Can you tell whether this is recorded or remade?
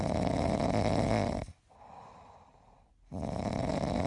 recorded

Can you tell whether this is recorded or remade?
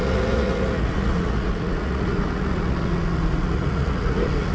remade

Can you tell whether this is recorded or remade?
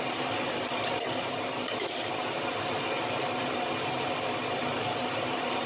recorded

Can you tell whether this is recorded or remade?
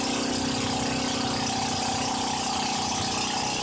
recorded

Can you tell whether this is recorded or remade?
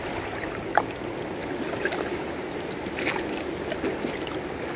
recorded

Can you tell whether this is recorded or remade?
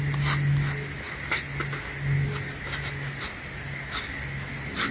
recorded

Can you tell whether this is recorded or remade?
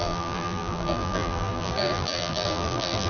remade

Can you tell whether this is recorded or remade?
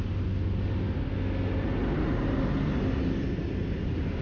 recorded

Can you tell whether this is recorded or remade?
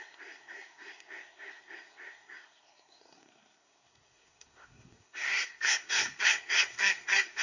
remade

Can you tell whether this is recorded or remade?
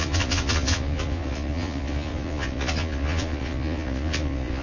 remade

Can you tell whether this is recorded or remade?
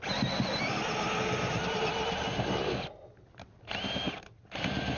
recorded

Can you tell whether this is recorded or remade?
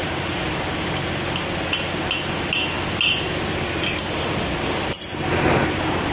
recorded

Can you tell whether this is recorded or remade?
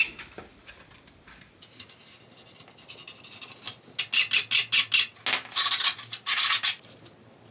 recorded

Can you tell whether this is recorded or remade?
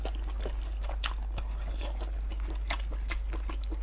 recorded